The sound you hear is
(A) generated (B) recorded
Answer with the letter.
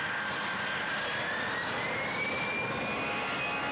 B